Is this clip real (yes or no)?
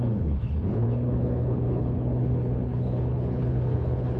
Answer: no